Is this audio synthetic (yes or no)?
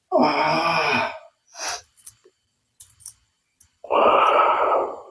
no